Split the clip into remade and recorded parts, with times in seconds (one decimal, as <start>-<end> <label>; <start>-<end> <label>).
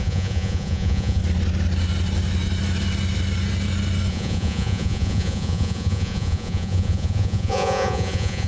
0.0-1.2 remade; 1.2-4.1 recorded; 4.1-8.5 remade